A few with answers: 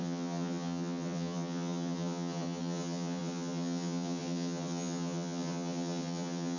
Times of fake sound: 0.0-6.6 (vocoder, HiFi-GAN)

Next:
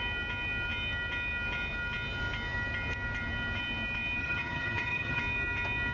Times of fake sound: 4.2-5.2 (vocoder, HiFi-GAN)

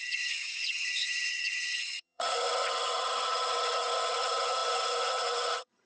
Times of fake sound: 0.0-5.9 (vocoder, HiFi-GAN)

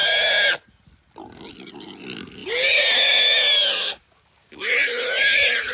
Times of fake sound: none

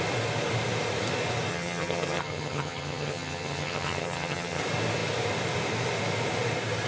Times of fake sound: 1.5-4.6 (vocoder, HiFi-GAN)

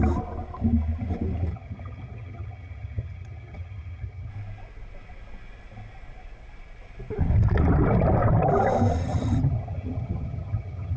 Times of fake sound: 1.5-4.3 (vocoder, HiFi-GAN); 9.0-11.0